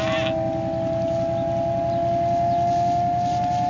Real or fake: real